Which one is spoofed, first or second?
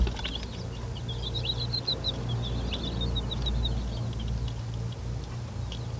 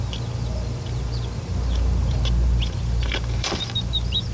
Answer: second